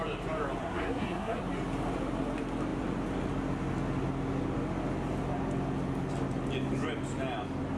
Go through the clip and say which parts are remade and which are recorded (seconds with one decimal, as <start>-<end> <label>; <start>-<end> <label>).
0.0-0.6 recorded; 0.6-1.4 remade; 1.4-7.8 recorded